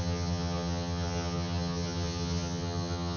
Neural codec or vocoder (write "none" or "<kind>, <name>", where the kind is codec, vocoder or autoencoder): vocoder, HiFi-GAN